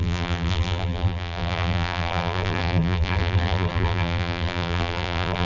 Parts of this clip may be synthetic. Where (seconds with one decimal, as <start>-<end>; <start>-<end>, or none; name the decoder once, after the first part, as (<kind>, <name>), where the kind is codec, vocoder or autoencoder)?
0.0-5.4 (vocoder, BigVGAN v2)